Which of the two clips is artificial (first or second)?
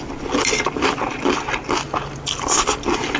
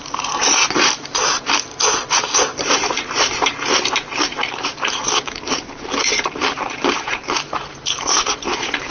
second